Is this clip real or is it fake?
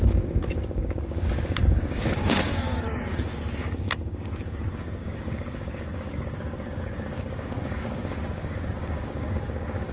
fake